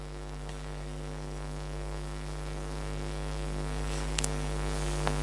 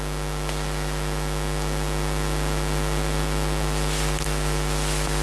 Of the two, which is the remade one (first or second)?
first